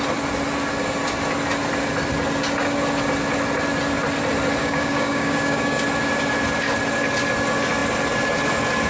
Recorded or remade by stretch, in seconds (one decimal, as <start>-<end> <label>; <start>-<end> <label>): 0.0-4.6 recorded; 4.6-5.8 remade; 5.8-8.9 recorded